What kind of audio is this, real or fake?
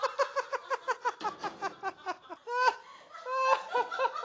real